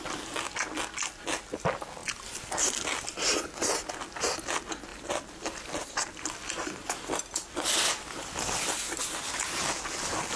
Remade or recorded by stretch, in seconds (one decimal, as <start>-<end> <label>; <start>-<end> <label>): 0.0-4.9 recorded; 4.9-8.2 remade; 8.2-10.4 recorded